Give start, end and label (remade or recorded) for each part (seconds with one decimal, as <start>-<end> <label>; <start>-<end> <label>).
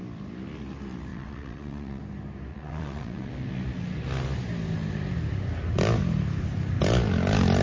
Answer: 0.0-1.1 recorded; 1.1-2.0 remade; 2.0-2.5 recorded; 2.5-3.3 remade; 3.3-7.6 recorded